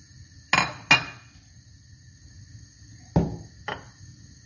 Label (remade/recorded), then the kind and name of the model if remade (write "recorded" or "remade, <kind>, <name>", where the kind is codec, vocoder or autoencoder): recorded